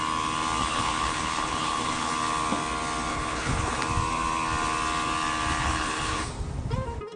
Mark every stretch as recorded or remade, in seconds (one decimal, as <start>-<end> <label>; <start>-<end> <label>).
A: 0.0-0.6 recorded; 0.6-2.1 remade; 2.1-3.1 recorded; 3.1-3.8 remade; 3.8-5.6 recorded; 5.6-6.3 remade; 6.3-7.2 recorded